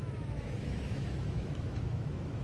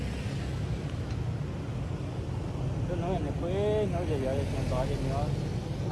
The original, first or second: second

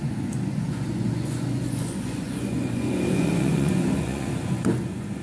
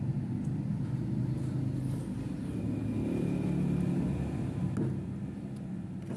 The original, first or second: second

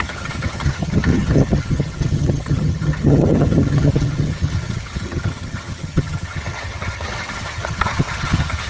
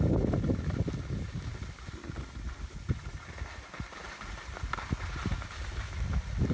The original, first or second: second